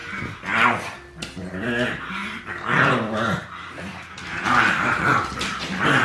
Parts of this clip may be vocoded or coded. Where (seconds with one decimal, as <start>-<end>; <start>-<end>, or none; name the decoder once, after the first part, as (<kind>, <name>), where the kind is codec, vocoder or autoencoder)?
1.1-2.2 (vocoder, BigVGAN v2); 2.9-6.0